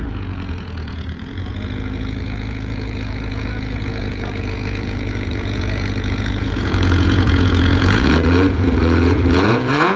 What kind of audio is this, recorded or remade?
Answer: remade